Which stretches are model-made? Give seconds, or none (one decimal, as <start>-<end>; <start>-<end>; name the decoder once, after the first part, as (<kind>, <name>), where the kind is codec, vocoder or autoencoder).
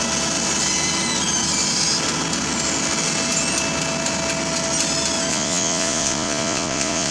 5.3-7.1 (vocoder, Vocos)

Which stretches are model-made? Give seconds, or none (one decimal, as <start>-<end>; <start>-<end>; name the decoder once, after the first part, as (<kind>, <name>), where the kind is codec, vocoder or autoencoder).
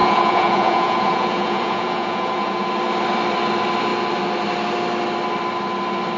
0.0-2.7 (vocoder, Vocos)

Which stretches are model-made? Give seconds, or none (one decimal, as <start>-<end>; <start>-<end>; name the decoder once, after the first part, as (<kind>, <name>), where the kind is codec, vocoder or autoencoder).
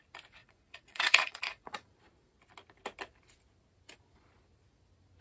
0.4-1.9 (vocoder, Vocos)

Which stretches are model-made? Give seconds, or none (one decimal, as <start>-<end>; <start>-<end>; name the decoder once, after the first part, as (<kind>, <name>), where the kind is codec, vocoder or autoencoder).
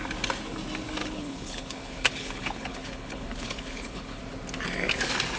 1.0-4.2 (codec, HILCodec)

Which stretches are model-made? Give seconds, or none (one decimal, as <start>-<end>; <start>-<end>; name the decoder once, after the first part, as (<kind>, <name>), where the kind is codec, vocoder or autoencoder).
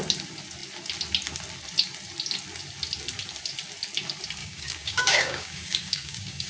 4.4-6.5 (codec, DAC)